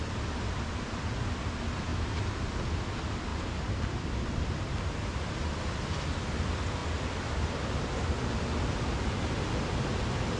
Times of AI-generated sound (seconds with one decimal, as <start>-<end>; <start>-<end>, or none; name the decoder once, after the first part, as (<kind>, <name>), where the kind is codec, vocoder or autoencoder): none